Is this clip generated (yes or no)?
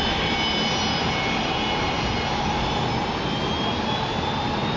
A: no